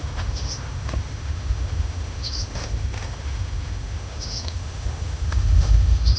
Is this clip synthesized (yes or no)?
yes